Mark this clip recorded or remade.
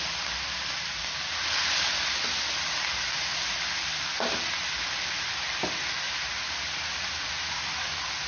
recorded